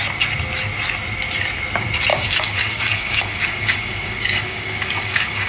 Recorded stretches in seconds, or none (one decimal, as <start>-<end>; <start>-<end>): 0.0-2.1